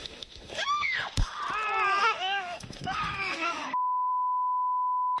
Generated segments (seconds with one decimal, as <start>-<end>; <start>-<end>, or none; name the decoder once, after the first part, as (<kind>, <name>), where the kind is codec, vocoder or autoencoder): 0.0-1.4 (autoencoder, DAC-VAE); 2.0-4.1